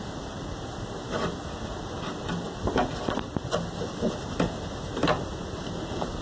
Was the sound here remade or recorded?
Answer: recorded